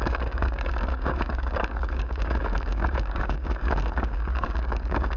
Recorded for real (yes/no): no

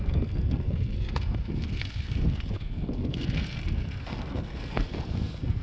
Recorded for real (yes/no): no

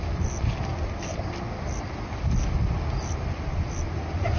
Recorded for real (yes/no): yes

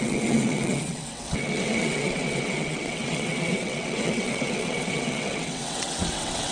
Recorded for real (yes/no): no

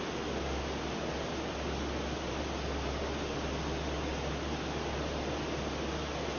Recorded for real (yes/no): yes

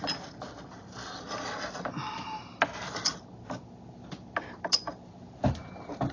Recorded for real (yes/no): yes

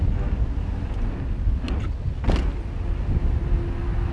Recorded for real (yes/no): yes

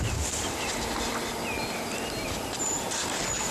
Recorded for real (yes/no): yes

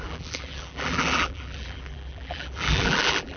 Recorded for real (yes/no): no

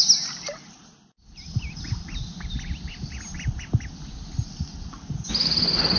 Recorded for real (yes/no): yes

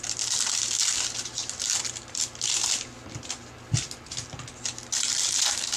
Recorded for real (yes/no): yes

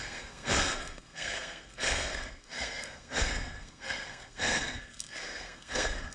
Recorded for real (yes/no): no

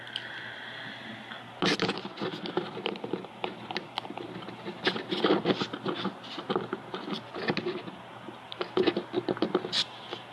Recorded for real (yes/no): yes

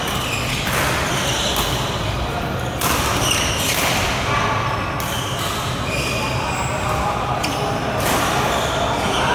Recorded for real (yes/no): yes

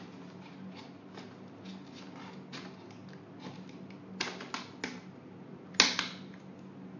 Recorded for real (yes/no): yes